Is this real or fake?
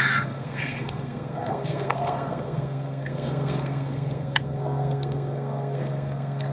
fake